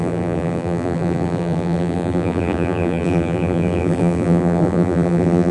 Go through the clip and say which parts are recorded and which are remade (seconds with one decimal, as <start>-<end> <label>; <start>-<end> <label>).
0.0-5.5 remade